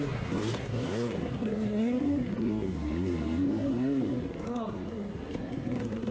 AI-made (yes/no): yes